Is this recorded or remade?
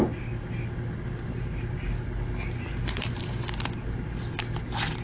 recorded